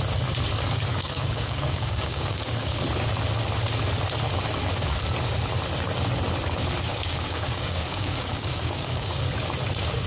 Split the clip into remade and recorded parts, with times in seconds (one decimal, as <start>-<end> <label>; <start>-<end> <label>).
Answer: 0.0-0.9 recorded; 0.9-2.8 remade; 2.8-6.9 recorded; 6.9-9.2 remade; 9.2-10.1 recorded